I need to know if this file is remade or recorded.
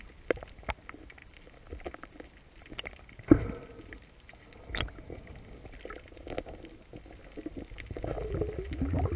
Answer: recorded